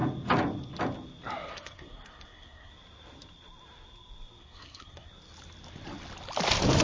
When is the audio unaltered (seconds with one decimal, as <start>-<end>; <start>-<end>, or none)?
0.0-1.5; 2.7-4.4; 5.1-6.8